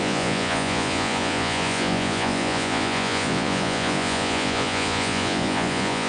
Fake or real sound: fake